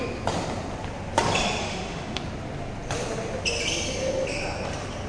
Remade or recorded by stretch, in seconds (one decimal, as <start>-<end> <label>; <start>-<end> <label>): 0.0-1.6 recorded; 1.6-2.2 remade; 2.2-5.1 recorded